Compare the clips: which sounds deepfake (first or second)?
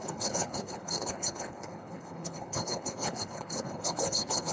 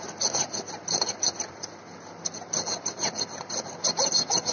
first